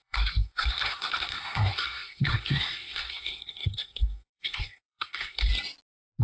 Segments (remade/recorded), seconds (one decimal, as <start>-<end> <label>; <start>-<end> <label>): 0.0-5.5 remade; 5.5-6.2 recorded